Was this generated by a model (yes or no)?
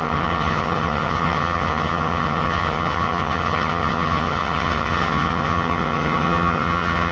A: yes